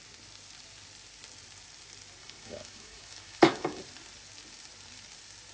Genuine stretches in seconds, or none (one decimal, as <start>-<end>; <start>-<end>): 0.0-2.2; 3.8-5.5